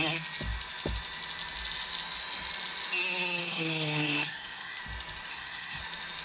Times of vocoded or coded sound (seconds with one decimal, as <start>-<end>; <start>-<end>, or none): 3.4-4.8; 5.3-5.8